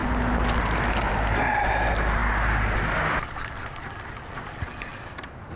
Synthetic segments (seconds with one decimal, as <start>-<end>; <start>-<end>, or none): none